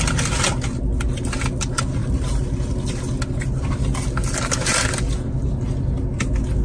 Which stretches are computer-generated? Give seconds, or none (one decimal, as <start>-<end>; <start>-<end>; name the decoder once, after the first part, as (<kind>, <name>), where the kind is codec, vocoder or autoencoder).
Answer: none